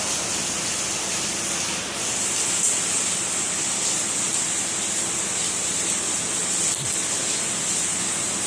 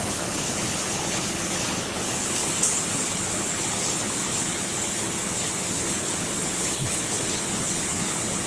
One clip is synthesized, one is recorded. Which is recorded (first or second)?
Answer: first